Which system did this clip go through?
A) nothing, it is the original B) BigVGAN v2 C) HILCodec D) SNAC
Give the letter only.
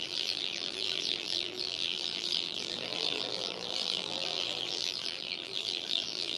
B